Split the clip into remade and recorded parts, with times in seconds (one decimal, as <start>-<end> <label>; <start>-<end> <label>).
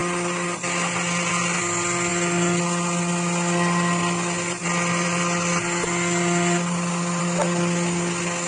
0.0-8.5 recorded